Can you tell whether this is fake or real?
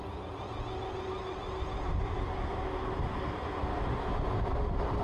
real